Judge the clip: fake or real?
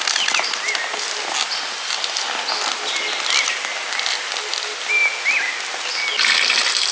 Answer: real